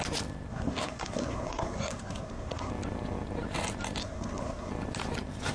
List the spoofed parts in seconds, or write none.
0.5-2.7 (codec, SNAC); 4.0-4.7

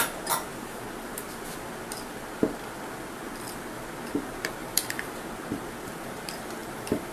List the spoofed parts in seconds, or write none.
4.6-5.1 (vocoder, BigVGAN v2); 6.6-7.1

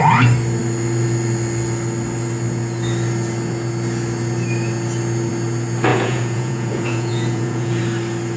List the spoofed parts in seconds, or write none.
5.9-7.8 (vocoder, Vocos)

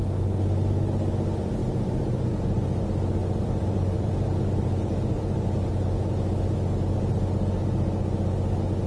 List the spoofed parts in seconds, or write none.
3.2-5.7 (vocoder, BigVGAN v2)

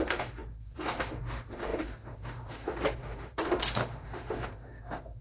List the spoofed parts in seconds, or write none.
0.0-5.2 (autoencoder, DAC-VAE)